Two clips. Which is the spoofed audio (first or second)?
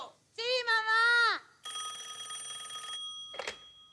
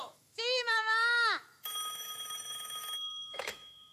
second